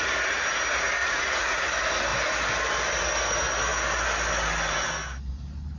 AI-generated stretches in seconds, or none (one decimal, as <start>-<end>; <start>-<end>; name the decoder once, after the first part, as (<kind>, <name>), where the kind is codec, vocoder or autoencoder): 1.0-1.6 (vocoder, Vocos)